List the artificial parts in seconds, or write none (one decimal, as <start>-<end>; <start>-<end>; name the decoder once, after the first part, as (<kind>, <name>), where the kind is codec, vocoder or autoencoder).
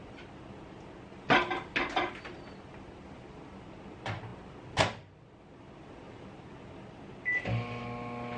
none